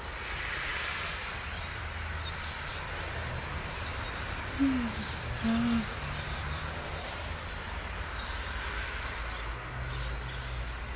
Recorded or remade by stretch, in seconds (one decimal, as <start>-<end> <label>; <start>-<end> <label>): 0.0-11.0 recorded

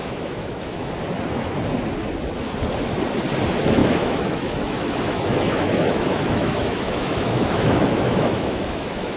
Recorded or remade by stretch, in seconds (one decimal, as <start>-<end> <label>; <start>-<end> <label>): 0.0-0.9 remade; 0.9-3.8 recorded; 3.8-9.2 remade

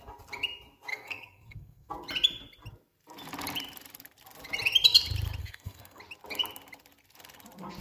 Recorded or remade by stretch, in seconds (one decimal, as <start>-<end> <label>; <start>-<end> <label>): 0.0-0.9 recorded; 0.9-1.9 remade; 1.9-5.4 recorded; 5.4-6.0 remade; 6.0-7.8 recorded

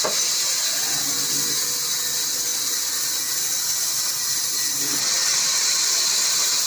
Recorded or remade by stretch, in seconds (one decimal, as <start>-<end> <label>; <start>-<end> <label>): 0.0-6.7 recorded

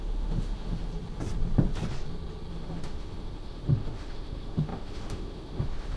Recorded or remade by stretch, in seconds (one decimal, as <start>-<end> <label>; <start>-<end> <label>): 0.0-0.9 remade; 0.9-2.5 recorded; 2.5-6.0 remade